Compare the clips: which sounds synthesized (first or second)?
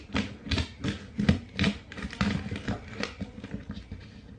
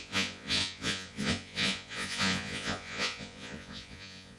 second